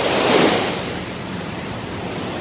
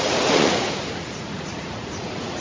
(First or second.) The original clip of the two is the first